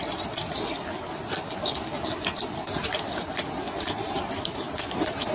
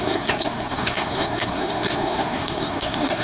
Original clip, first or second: first